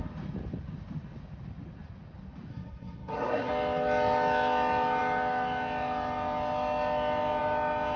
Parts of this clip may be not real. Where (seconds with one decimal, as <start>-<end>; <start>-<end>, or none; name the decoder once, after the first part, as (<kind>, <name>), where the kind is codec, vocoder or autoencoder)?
2.5-3.5 (codec, SNAC)